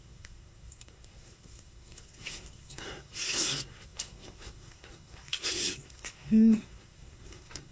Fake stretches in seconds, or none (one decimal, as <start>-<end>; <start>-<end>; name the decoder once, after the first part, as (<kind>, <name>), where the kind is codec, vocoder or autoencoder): 0.0-7.7 (codec, SNAC)

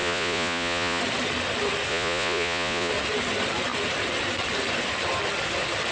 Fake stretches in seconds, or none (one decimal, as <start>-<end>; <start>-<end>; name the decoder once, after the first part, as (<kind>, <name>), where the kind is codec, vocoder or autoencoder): 0.0-1.0 (vocoder, Vocos); 1.9-2.9

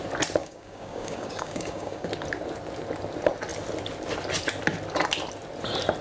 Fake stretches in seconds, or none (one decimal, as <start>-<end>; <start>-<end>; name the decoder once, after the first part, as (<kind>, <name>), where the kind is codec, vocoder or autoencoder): 0.4-2.1 (codec, DAC)

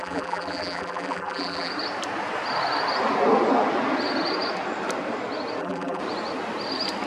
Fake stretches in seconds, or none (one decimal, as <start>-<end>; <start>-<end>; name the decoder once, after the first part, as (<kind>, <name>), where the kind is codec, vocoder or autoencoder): 0.0-1.7 (vocoder, BigVGAN v2); 5.6-6.0

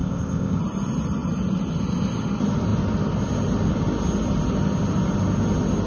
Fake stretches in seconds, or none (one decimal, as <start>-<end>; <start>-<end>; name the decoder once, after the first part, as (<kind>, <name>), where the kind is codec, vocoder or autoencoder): 0.0-0.6 (codec, ZipCodec)

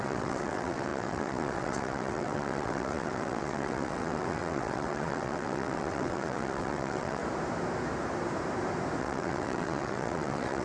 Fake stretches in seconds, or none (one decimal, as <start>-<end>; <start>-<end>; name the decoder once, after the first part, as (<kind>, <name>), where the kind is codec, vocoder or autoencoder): 0.0-7.2 (vocoder, WaveNeXt); 9.0-10.6

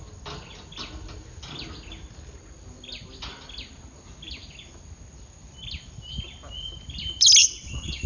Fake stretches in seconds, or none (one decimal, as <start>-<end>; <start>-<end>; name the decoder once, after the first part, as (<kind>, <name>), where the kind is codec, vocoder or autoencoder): 7.4-8.1 (vocoder, WaveNeXt)